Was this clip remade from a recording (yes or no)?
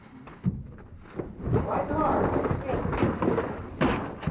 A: no